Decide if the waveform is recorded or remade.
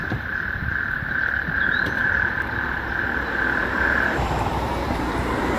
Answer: remade